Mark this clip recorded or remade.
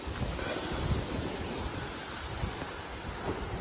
recorded